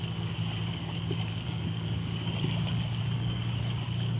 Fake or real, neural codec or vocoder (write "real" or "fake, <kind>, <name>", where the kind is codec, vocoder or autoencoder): fake, codec, DAC